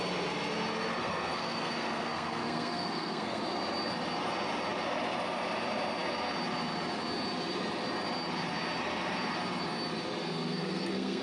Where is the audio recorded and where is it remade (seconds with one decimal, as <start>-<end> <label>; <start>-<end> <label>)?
0.0-1.0 recorded; 1.0-3.4 remade; 3.4-10.2 recorded; 10.2-11.2 remade